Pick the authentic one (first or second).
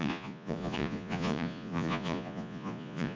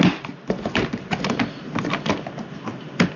second